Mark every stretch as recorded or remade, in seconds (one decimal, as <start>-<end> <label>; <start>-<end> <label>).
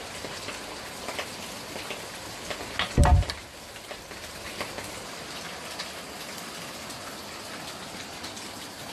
0.0-8.9 recorded